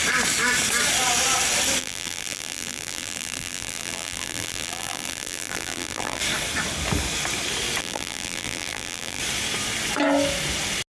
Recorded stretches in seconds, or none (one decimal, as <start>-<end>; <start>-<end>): 0.0-1.8; 6.2-7.8; 9.2-10.9